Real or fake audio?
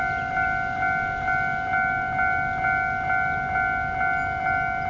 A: real